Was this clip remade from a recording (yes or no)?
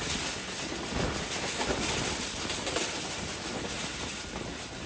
no